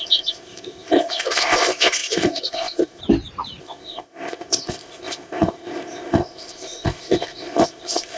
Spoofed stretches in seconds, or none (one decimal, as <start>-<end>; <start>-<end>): 0.0-3.0; 3.6-8.2